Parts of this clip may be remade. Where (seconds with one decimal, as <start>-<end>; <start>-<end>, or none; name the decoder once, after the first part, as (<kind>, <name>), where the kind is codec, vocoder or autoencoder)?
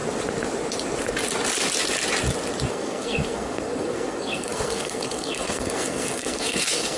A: 2.7-7.0 (codec, SNAC)